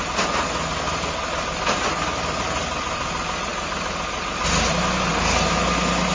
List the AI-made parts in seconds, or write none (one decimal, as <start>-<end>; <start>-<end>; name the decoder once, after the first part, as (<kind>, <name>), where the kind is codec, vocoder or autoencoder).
none